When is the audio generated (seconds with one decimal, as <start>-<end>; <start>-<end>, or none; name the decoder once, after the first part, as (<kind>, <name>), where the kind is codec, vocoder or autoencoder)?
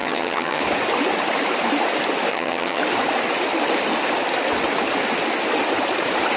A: 0.0-0.6 (vocoder, HiFi-GAN); 2.3-2.8